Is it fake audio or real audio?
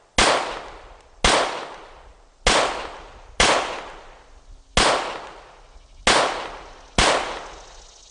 real